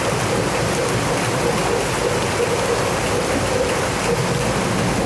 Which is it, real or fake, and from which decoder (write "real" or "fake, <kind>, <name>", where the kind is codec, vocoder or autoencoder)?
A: real